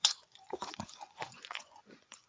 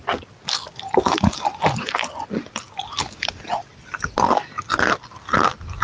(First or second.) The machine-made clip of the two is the first